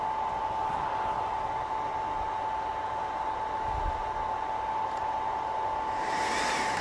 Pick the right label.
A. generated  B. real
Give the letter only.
B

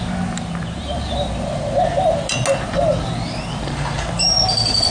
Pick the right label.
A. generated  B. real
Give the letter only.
B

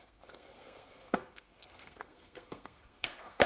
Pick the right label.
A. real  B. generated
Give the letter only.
B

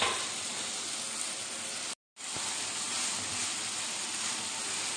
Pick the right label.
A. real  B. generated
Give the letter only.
A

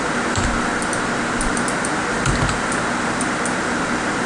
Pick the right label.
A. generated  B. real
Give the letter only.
A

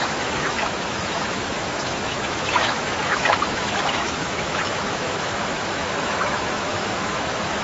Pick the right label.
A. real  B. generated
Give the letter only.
B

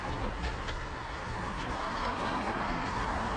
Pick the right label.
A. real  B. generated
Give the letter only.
B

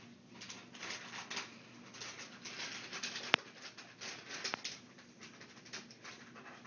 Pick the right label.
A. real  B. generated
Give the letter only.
A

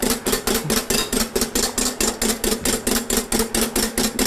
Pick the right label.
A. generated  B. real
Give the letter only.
B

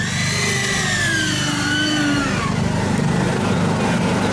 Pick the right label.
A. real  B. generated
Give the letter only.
A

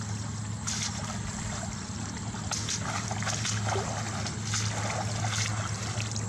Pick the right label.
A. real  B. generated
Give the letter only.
A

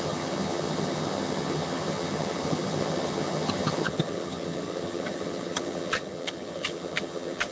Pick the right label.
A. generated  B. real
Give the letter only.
A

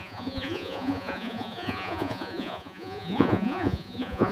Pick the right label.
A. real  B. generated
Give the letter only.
B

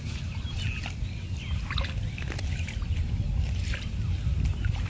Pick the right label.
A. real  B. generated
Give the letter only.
A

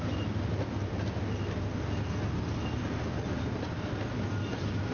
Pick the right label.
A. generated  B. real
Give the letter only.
B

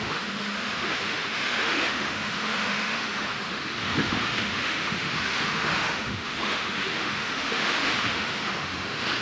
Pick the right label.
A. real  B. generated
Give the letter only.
B